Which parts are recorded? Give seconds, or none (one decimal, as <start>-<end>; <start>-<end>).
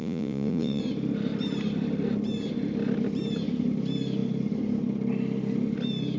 0.8-6.2